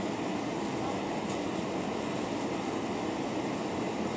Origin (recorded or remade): recorded